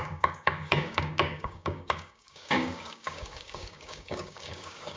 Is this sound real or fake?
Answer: fake